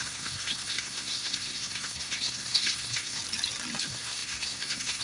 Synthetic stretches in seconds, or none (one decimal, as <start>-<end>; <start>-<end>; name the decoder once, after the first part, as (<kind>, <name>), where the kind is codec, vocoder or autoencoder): 0.0-3.2 (codec, SNAC); 3.8-5.0